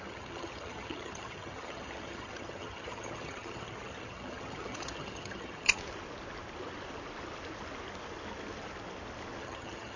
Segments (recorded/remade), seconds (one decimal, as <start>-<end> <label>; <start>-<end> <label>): 0.0-5.8 remade; 5.8-9.4 recorded; 9.4-10.0 remade